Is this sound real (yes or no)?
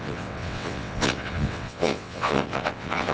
no